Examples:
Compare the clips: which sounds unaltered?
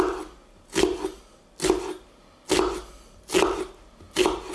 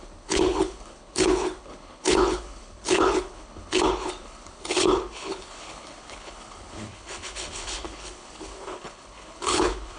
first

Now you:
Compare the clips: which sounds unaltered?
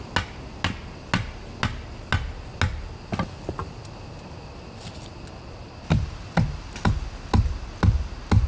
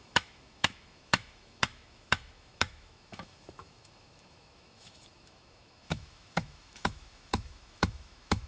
first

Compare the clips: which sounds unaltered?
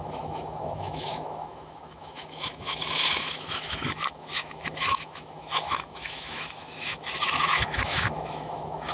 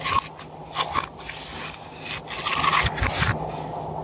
second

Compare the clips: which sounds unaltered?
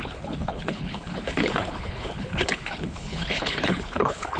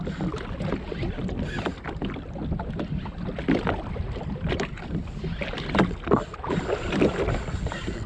second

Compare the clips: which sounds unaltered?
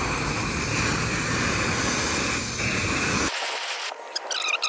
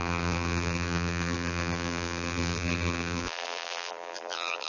first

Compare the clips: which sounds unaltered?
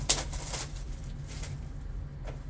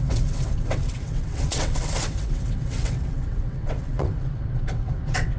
first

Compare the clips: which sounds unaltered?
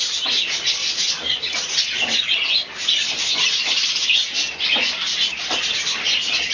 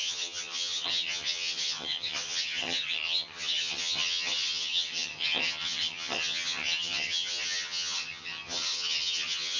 first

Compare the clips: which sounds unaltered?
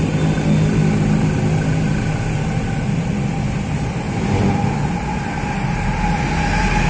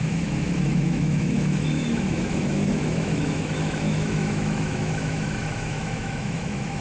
first